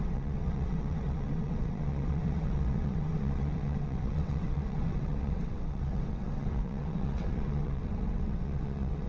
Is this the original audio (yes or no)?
no